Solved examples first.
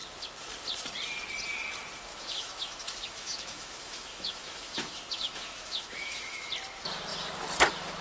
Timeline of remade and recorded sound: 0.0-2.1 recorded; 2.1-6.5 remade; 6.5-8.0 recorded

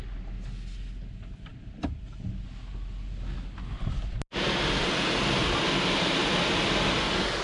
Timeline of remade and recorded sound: 0.0-7.4 recorded